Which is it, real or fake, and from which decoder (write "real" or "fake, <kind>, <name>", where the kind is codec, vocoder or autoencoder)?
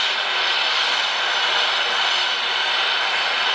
fake, vocoder, BigVGAN v2